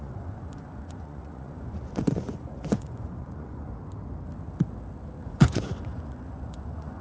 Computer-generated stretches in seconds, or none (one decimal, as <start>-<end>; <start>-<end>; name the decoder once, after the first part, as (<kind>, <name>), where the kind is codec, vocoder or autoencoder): 0.0-3.7 (vocoder, Vocos); 5.2-7.0